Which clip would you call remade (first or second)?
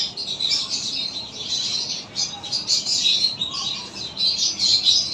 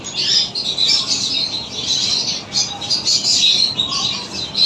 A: first